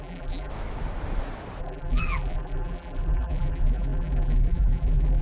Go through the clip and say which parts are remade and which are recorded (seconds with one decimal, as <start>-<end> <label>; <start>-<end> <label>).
0.0-0.5 remade; 0.5-1.6 recorded; 1.6-5.2 remade